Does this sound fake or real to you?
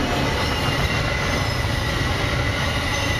real